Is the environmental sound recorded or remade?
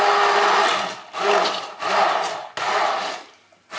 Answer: recorded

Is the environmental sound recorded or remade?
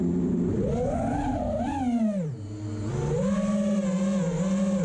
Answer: recorded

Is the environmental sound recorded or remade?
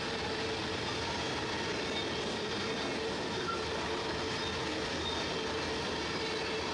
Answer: recorded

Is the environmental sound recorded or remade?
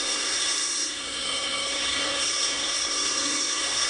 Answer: remade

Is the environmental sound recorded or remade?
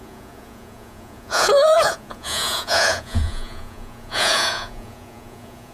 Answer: remade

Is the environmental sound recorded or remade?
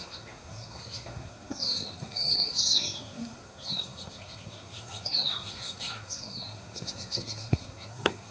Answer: remade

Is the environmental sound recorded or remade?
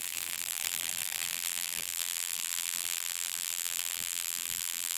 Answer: remade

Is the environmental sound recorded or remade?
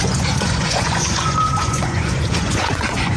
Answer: remade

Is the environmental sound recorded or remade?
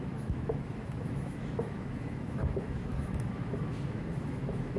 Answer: remade